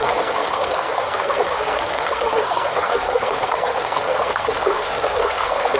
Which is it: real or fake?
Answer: fake